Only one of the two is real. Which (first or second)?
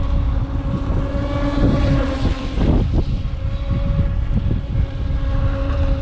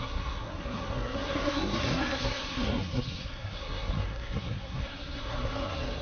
first